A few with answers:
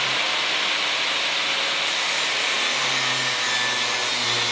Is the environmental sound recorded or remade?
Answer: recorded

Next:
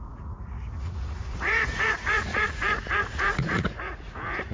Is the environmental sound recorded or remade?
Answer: remade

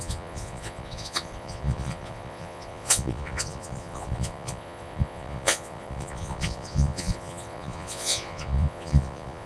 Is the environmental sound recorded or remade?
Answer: remade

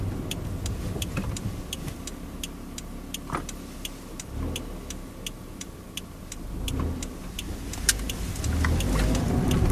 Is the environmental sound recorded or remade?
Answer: recorded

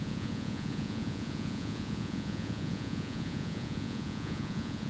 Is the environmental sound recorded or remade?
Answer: remade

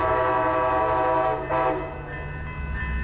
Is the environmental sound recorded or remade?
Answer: recorded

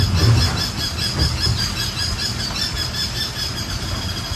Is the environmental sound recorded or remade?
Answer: recorded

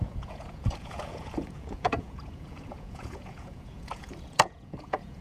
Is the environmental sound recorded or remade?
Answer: remade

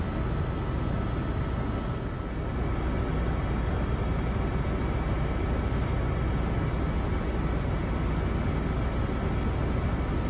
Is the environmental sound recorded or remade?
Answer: recorded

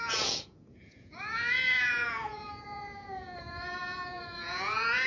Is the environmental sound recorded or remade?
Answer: remade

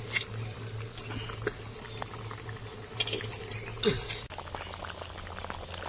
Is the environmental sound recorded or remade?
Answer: recorded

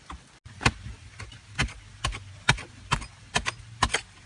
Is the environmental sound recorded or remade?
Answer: recorded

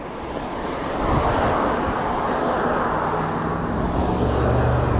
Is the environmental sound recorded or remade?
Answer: recorded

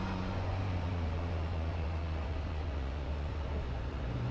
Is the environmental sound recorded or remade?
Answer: remade